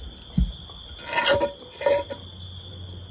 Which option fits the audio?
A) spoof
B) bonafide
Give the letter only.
B